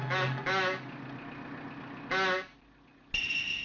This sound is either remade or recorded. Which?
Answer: recorded